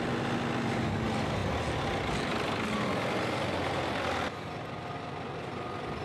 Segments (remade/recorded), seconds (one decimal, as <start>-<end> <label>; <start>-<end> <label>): 0.0-6.0 recorded

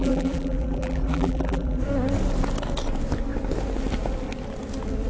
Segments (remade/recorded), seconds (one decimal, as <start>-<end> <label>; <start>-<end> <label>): 0.0-1.8 remade; 1.8-5.1 recorded

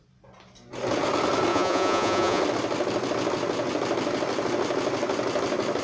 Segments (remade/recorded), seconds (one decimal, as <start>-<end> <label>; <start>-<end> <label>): 0.0-1.5 recorded; 1.5-2.4 remade; 2.4-5.8 recorded